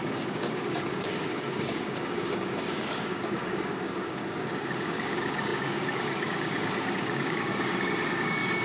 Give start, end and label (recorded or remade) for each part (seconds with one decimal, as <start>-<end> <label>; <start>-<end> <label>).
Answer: 0.0-8.6 remade